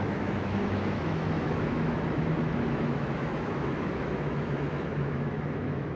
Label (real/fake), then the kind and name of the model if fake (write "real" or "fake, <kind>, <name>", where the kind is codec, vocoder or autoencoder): fake, autoencoder, DAC-VAE